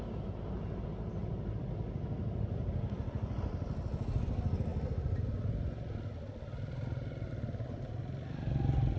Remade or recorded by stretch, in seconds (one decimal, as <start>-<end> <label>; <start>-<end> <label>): 0.0-9.0 recorded